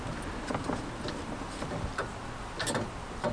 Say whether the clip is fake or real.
real